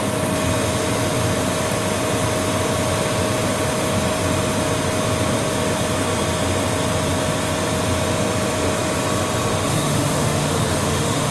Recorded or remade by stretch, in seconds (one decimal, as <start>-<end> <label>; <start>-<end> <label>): 0.0-9.5 recorded; 9.5-11.3 remade